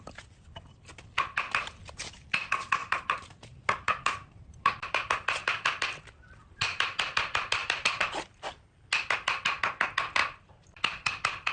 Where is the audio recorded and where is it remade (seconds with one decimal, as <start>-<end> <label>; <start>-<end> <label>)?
0.0-2.8 recorded; 2.8-5.0 remade; 5.0-7.6 recorded; 7.6-8.4 remade; 8.4-10.2 recorded; 10.2-11.1 remade; 11.1-11.5 recorded